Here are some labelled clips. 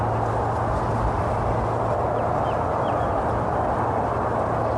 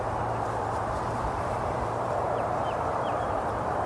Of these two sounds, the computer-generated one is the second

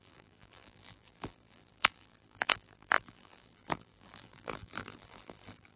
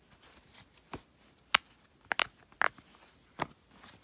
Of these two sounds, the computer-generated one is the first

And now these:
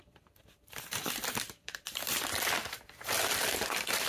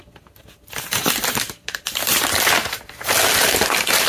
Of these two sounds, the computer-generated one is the first